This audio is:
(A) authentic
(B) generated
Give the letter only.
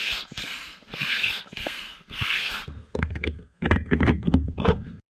B